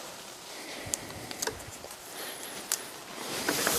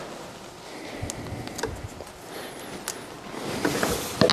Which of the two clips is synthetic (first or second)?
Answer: first